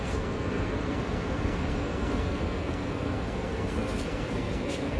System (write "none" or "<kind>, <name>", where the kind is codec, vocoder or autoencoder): codec, SNAC